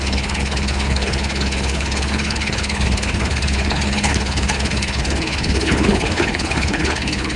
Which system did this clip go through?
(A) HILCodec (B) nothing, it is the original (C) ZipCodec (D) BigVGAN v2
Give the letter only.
A